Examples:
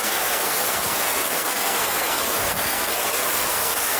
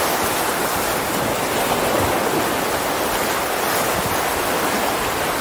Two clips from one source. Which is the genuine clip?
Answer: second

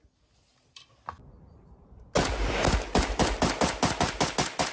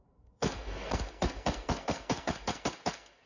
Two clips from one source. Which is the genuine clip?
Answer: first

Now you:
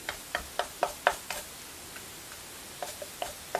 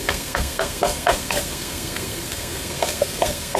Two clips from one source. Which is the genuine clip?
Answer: first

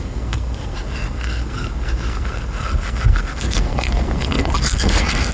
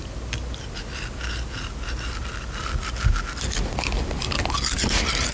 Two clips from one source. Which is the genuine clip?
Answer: second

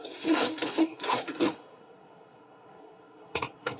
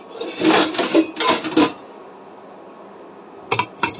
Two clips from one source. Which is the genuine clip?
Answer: second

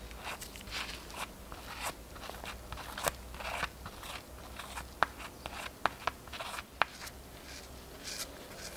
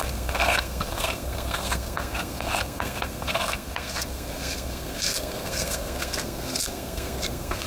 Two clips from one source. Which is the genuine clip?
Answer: first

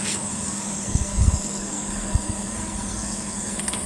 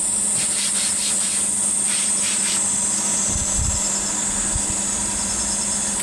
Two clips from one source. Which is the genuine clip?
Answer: second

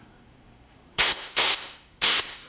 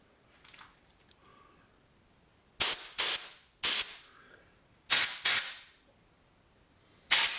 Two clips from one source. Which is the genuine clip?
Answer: second